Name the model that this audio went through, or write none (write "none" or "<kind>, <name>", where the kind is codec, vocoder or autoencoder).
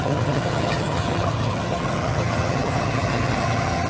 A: vocoder, HiFi-GAN